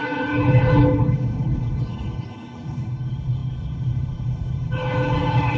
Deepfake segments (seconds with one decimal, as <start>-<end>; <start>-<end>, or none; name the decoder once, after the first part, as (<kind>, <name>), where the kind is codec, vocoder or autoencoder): 0.0-5.6 (codec, HILCodec)